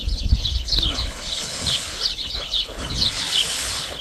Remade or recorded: remade